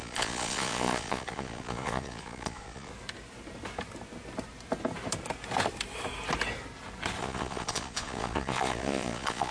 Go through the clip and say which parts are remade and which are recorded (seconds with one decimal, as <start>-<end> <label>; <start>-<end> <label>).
0.0-2.9 remade; 2.9-7.2 recorded; 7.2-9.5 remade